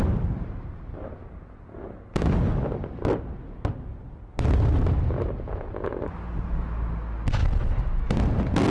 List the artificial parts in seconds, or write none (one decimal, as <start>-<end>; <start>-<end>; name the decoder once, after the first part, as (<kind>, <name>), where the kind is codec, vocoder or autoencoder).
none